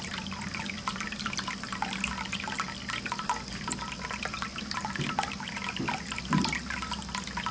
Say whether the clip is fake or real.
real